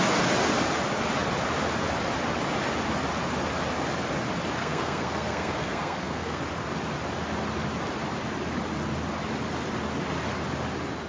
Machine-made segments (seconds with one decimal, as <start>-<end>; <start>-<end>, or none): 4.6-6.4